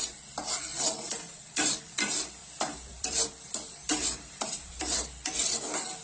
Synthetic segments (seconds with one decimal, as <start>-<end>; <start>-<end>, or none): 0.7-1.8; 2.4-5.6